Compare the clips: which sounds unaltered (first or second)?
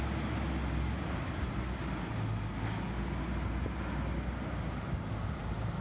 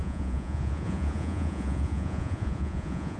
first